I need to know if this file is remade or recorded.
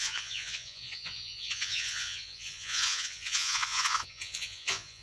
remade